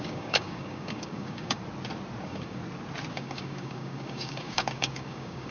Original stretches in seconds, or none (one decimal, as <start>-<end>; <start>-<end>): 1.6-2.2; 2.6-3.1